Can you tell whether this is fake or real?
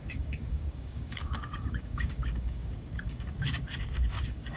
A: fake